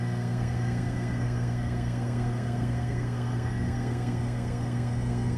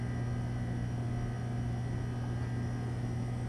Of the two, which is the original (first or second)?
second